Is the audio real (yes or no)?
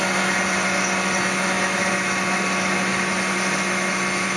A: yes